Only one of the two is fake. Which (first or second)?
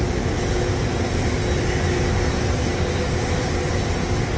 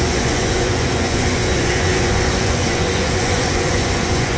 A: second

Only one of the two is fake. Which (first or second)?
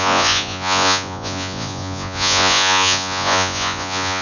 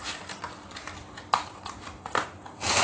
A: first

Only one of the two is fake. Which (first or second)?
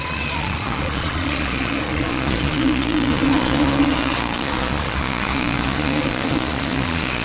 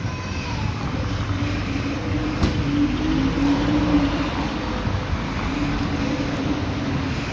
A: first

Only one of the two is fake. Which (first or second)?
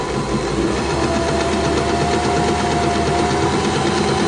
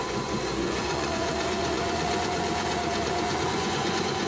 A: second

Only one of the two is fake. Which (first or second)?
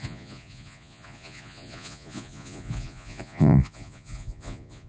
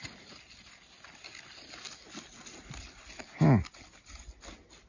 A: first